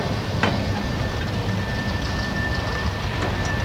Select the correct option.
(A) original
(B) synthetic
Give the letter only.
A